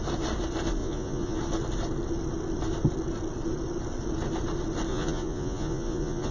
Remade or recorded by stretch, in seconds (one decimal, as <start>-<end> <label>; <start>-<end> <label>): 0.0-0.8 recorded; 0.8-1.4 remade; 1.4-4.9 recorded; 4.9-6.3 remade